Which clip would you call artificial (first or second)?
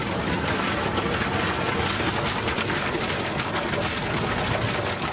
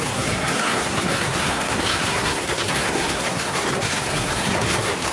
second